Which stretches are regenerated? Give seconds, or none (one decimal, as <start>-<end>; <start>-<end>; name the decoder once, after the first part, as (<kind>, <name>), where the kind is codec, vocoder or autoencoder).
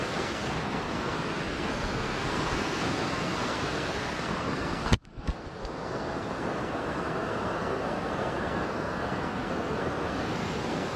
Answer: 0.0-11.0 (codec, SNAC)